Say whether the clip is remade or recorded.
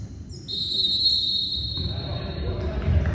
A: recorded